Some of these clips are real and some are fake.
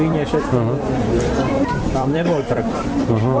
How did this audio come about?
fake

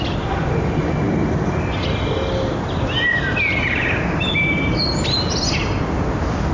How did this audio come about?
real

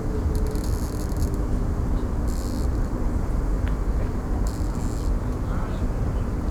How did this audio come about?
real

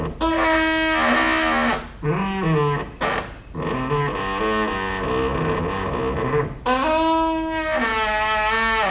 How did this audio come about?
real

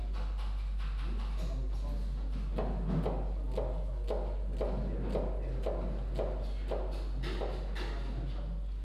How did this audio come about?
real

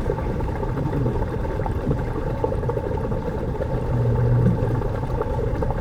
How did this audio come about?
fake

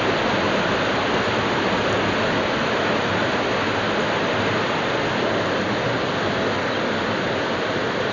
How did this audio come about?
real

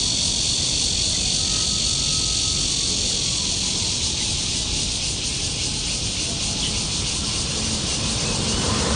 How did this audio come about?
real